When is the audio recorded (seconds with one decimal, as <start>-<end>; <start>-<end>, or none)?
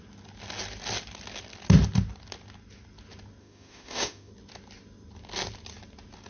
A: 0.0-3.4; 4.3-6.3